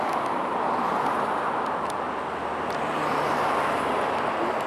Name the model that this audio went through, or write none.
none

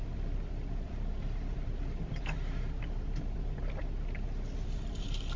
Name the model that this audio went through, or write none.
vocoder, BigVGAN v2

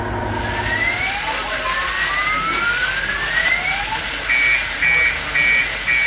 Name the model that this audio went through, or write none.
none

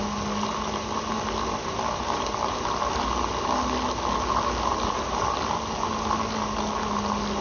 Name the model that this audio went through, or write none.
none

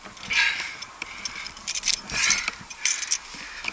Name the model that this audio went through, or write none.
none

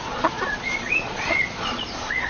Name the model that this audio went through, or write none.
vocoder, Vocos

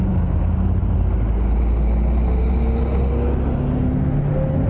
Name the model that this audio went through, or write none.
none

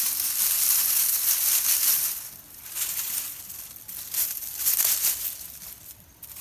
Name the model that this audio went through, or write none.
vocoder, BigVGAN v2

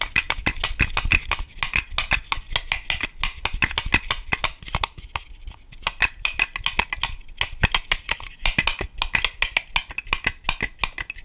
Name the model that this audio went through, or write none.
none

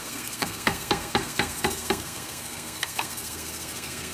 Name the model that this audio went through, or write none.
codec, SNAC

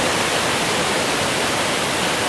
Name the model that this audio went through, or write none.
none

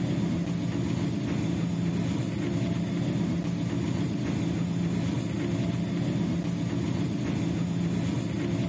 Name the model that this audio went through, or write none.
none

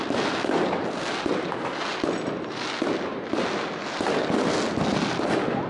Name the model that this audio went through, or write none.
none